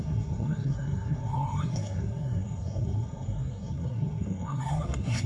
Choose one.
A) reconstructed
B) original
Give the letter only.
A